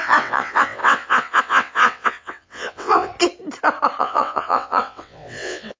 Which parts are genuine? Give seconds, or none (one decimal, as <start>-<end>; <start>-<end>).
3.1-4.0